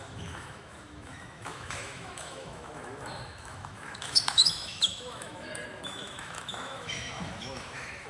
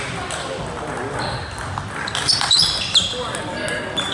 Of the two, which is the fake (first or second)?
first